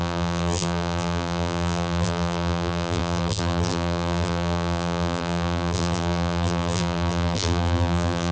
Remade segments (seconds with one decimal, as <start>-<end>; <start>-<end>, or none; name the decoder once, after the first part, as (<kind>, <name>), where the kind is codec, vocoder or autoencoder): 0.0-8.3 (vocoder, BigVGAN v2)